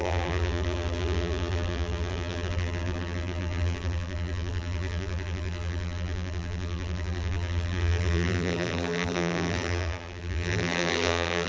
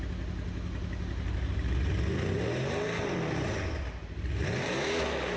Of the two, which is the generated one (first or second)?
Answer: first